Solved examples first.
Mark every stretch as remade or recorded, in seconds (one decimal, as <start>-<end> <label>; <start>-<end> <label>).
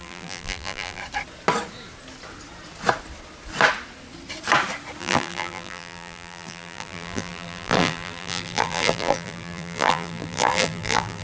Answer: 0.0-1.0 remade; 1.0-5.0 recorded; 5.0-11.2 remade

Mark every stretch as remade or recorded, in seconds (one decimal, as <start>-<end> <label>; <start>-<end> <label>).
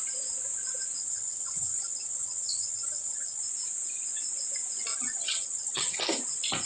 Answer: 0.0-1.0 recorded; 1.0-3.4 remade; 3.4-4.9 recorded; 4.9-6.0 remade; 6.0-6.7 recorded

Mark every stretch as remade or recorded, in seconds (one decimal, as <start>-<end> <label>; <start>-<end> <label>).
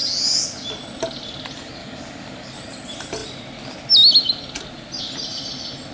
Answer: 0.0-1.8 recorded; 1.8-2.5 remade; 2.5-5.9 recorded